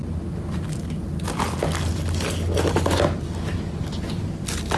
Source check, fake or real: real